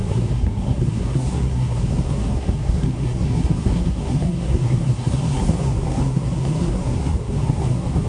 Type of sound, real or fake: fake